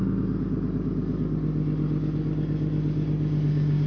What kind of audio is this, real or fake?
real